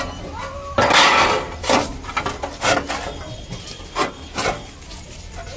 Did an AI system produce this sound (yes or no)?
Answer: no